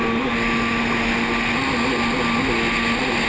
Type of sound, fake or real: real